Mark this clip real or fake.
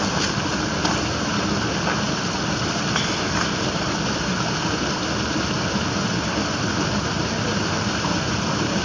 real